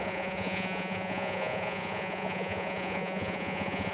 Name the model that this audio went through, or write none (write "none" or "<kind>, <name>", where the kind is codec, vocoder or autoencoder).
vocoder, Vocos